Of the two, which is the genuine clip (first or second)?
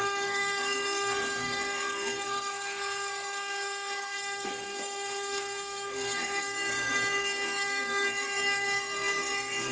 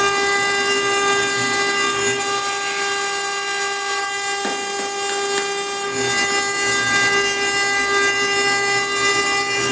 second